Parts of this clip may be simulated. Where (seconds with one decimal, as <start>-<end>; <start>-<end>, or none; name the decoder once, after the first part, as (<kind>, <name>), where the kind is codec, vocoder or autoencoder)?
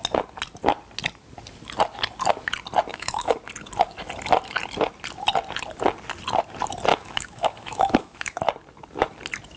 2.9-3.4 (autoencoder, DAC-VAE); 6.9-8.4